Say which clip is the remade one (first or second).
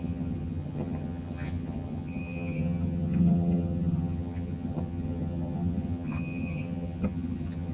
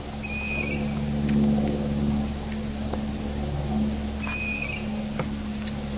first